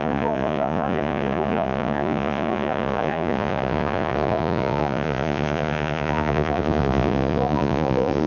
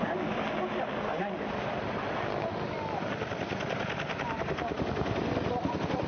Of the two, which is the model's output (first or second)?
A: first